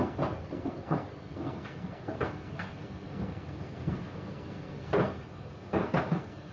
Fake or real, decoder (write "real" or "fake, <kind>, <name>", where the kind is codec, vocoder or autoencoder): fake, codec, SNAC